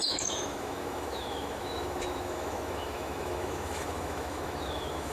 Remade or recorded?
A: remade